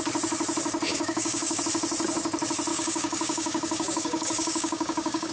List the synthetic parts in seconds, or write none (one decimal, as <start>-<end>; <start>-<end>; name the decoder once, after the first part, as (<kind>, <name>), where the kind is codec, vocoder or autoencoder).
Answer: 0.9-1.6 (codec, DAC); 2.7-5.3